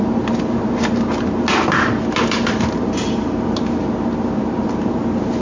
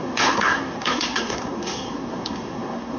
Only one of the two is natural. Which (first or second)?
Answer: first